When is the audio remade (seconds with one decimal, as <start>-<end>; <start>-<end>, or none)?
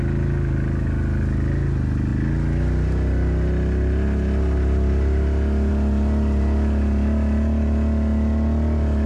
none